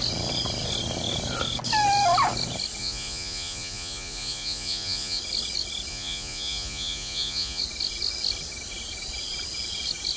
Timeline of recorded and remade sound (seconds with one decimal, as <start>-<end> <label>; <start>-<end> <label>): 0.0-2.8 recorded; 2.8-5.2 remade; 5.2-5.9 recorded; 5.9-7.6 remade; 7.6-10.2 recorded